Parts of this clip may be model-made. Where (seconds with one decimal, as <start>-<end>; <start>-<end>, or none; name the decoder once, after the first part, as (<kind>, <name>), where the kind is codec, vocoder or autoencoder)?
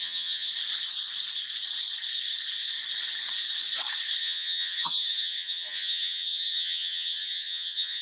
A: 0.0-0.5 (vocoder, HiFi-GAN); 4.2-8.0